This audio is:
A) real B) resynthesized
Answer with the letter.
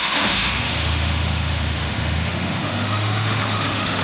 B